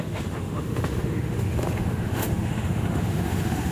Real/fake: fake